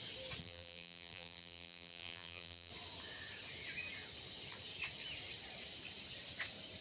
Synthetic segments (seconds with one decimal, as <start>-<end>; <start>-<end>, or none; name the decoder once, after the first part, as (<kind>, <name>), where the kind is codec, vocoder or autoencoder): 0.4-2.7 (vocoder, BigVGAN v2)